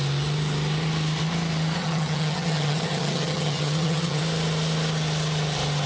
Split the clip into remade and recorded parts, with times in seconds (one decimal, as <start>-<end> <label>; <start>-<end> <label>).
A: 0.0-1.8 recorded; 1.8-4.2 remade; 4.2-5.9 recorded